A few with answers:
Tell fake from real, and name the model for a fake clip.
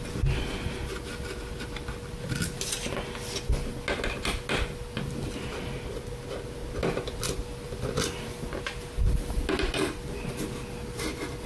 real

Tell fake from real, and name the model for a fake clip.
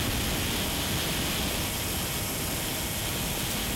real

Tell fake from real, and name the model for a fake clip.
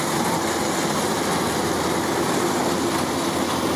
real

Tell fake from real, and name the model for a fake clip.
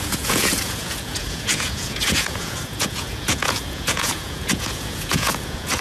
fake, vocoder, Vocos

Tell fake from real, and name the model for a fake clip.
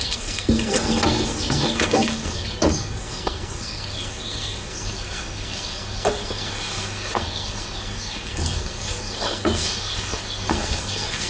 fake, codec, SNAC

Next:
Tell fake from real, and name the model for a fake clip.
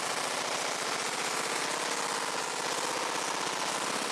real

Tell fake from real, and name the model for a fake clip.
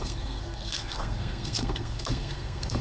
fake, codec, SNAC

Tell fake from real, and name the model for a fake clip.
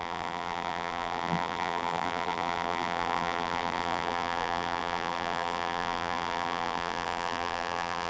fake, vocoder, BigVGAN v2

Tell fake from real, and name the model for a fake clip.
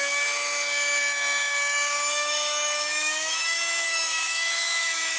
fake, autoencoder, DAC-VAE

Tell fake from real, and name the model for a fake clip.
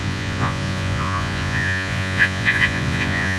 fake, vocoder, Vocos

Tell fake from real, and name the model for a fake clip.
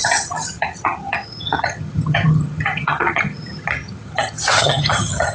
fake, vocoder, HiFi-GAN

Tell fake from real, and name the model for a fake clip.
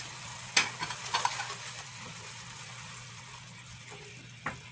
real